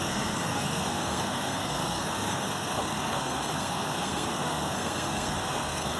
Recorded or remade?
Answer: remade